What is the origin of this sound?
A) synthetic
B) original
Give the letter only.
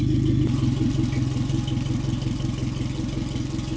B